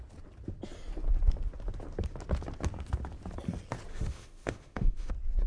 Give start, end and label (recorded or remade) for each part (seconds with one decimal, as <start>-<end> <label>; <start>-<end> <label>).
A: 0.0-3.9 recorded; 3.9-5.1 remade; 5.1-5.5 recorded